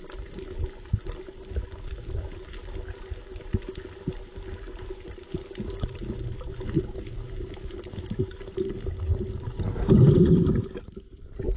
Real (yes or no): yes